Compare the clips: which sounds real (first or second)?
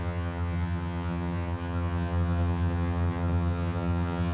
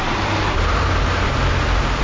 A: second